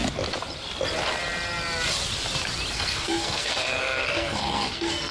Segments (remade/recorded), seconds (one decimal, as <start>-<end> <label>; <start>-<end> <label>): 0.0-2.7 recorded; 2.7-5.1 remade